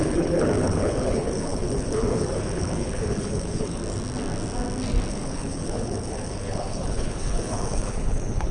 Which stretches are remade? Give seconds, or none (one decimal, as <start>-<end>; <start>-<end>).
0.0-3.8; 5.1-8.5